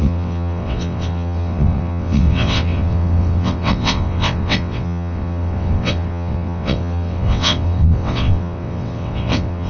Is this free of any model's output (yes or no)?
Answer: no